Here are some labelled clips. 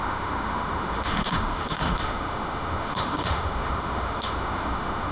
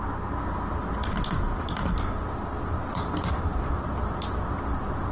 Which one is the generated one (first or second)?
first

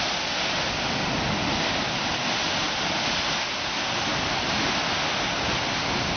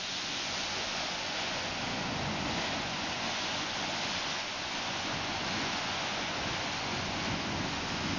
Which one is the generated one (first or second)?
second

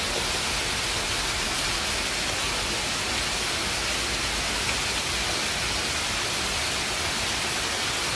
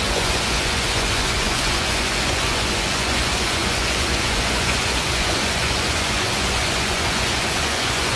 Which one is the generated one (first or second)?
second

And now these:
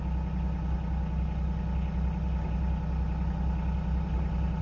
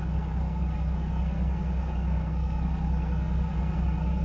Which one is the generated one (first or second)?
second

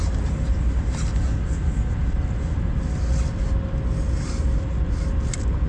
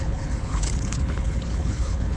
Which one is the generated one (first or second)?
second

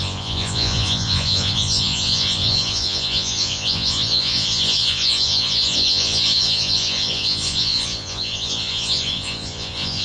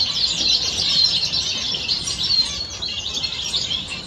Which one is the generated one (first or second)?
first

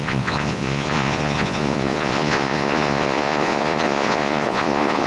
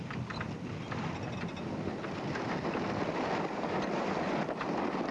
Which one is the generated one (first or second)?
first